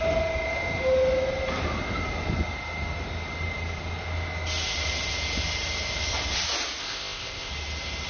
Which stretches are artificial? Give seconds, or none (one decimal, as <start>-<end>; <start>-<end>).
6.8-7.5